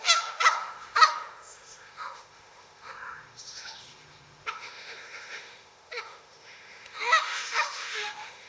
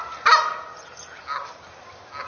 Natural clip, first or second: second